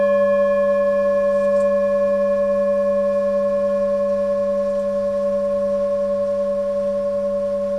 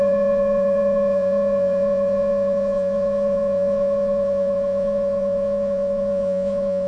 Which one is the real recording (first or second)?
first